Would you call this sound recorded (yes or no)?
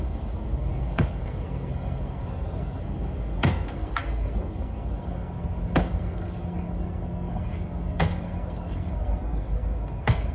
no